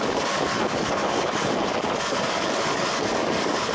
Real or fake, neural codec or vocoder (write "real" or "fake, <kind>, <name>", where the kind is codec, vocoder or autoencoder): fake, codec, DAC